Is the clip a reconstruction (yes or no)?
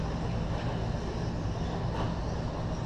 no